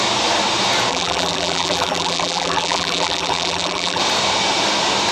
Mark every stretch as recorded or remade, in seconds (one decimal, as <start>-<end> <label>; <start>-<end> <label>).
0.0-0.9 recorded; 0.9-4.0 remade; 4.0-5.1 recorded